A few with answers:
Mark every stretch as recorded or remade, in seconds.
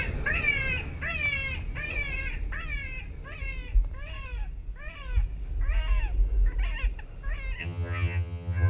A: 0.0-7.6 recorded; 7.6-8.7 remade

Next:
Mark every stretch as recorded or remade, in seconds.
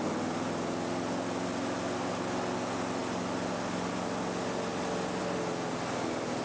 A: 0.0-6.4 recorded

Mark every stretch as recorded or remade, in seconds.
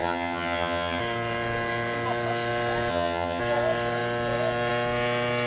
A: 0.0-1.0 remade; 1.0-2.9 recorded; 2.9-3.4 remade; 3.4-5.5 recorded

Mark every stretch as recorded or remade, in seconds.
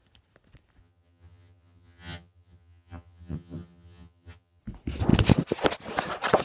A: 0.0-0.8 recorded; 0.8-4.6 remade; 4.6-6.4 recorded